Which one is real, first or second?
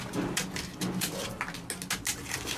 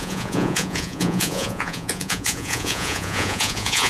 first